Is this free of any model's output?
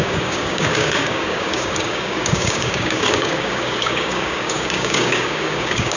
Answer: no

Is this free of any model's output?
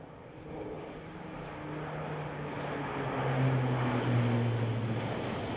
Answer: yes